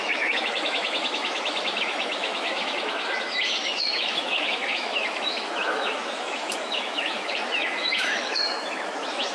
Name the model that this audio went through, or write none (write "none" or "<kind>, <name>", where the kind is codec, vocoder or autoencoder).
autoencoder, DAC-VAE